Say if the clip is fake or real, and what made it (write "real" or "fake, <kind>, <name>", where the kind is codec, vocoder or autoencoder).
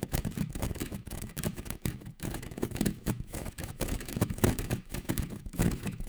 fake, autoencoder, DAC-VAE